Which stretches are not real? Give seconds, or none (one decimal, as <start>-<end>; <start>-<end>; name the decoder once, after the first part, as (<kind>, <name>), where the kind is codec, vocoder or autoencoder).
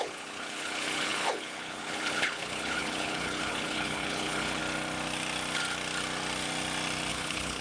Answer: 0.0-4.6 (codec, HILCodec); 7.1-7.6